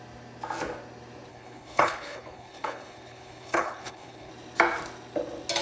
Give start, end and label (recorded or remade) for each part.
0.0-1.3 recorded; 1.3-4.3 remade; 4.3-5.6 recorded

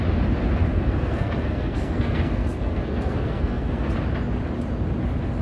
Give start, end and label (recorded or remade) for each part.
0.0-0.7 recorded; 0.7-3.9 remade; 3.9-5.4 recorded

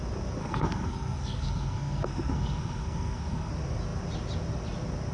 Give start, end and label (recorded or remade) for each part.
0.0-0.4 recorded; 0.4-3.5 remade; 3.5-5.1 recorded

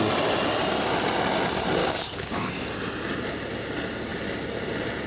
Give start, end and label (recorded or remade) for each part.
0.0-1.8 recorded; 1.8-2.5 remade; 2.5-5.1 recorded

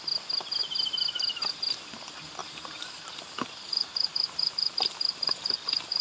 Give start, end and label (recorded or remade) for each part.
0.0-6.0 recorded

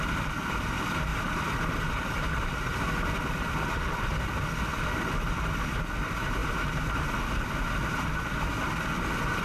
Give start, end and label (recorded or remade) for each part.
0.0-1.1 recorded; 1.1-2.7 remade; 2.7-9.4 recorded

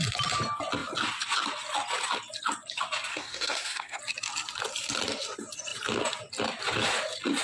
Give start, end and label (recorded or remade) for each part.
0.0-3.1 recorded; 3.1-4.0 remade; 4.0-7.4 recorded